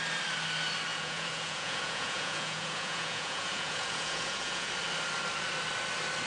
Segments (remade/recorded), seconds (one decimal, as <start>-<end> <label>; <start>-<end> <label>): 0.0-0.9 recorded; 0.9-4.7 remade; 4.7-6.3 recorded